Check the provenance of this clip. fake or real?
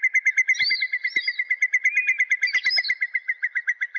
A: real